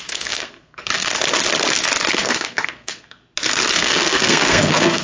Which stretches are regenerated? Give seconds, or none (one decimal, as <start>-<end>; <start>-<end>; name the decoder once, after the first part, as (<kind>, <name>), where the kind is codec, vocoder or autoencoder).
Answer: 0.0-1.1 (codec, SNAC); 2.1-3.2; 3.7-5.0